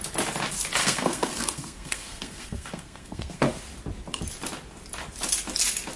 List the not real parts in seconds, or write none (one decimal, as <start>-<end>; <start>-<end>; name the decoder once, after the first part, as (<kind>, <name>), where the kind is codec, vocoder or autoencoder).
0.8-3.4 (codec, SNAC)